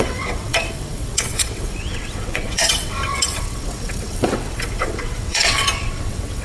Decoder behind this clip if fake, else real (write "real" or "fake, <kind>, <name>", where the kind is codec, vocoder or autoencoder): fake, vocoder, WaveNeXt